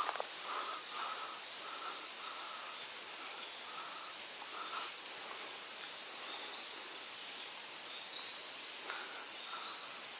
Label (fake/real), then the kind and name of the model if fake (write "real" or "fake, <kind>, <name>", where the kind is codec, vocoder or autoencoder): real